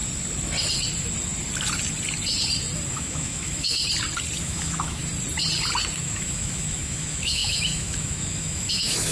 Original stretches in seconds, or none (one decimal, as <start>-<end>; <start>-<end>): 0.0-2.9; 3.8-4.4; 5.0-6.0